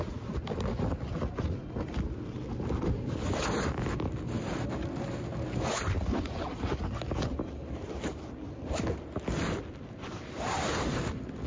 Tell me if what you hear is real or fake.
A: real